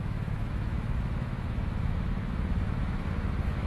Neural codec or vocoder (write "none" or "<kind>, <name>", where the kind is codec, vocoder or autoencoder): autoencoder, DAC-VAE